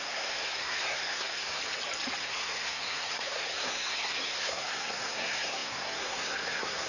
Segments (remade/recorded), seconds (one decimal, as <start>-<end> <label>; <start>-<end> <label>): 0.0-1.6 remade; 1.6-2.2 recorded; 2.2-6.9 remade